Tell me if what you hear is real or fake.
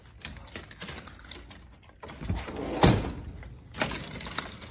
real